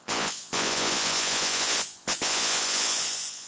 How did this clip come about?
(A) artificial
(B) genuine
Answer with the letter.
A